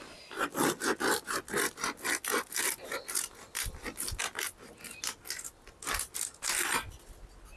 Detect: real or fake real